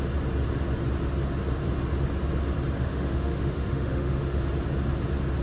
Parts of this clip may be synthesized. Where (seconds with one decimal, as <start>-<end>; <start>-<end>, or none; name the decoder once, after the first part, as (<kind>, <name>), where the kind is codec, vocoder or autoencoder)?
2.8-4.4 (autoencoder, DAC-VAE)